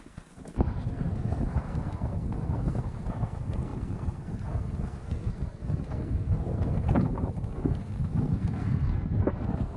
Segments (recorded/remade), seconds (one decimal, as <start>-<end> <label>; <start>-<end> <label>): 0.0-9.8 remade

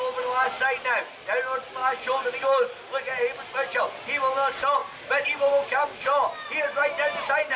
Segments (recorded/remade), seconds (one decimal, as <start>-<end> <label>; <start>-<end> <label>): 0.0-7.6 recorded

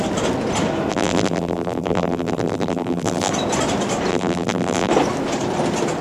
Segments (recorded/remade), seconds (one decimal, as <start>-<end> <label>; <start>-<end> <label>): 0.0-0.9 recorded; 0.9-3.3 remade; 3.3-4.1 recorded; 4.1-4.9 remade; 4.9-6.0 recorded